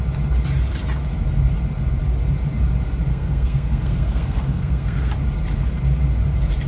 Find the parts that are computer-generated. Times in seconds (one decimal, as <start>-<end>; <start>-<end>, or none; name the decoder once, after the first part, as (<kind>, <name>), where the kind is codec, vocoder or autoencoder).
3.1-5.1 (codec, SNAC)